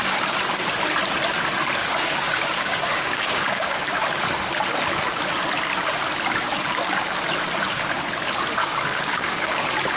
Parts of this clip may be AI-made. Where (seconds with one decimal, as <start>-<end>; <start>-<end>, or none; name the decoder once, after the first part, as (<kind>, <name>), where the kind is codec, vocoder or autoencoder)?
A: 1.8-3.8 (codec, DAC); 8.6-9.6